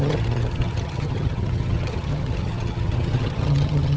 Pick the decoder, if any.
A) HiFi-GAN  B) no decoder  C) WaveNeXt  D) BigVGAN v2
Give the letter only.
A